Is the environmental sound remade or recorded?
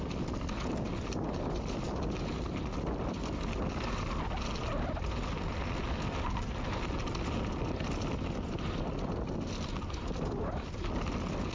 recorded